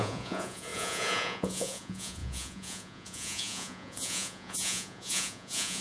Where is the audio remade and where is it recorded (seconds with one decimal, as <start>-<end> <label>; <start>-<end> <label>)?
0.0-5.8 remade